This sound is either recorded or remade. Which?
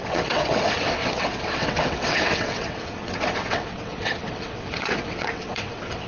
remade